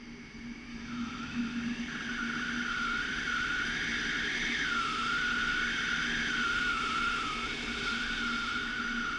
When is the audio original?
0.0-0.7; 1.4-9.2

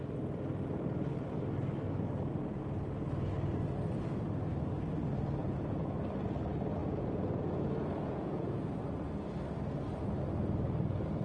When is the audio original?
0.0-5.4; 6.0-6.8; 8.6-11.2

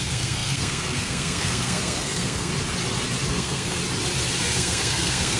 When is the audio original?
2.5-3.3; 3.8-4.4

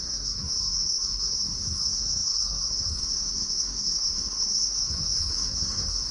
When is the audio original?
none

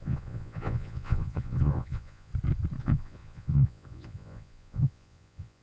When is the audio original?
2.3-2.8

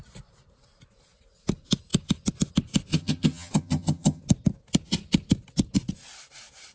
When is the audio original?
0.0-2.9; 4.2-6.7

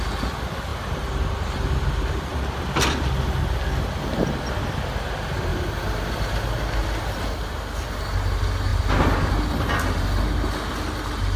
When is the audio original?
0.0-0.7; 3.4-5.5; 6.2-8.7; 9.3-11.4

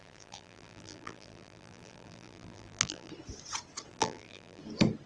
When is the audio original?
3.1-3.9; 4.6-5.1